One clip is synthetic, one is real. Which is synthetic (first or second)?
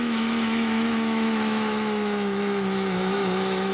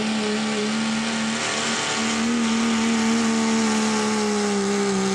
first